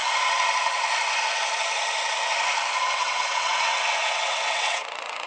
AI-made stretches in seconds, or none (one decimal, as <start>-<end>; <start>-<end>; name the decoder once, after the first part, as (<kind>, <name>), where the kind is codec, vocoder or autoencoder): 2.8-5.3 (vocoder, WaveNeXt)